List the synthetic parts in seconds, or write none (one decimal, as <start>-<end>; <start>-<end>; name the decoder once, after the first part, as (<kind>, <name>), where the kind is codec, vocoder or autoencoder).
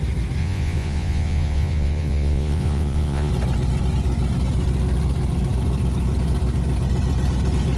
0.4-3.3 (vocoder, Vocos)